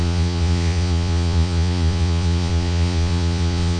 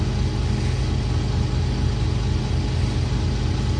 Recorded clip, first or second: second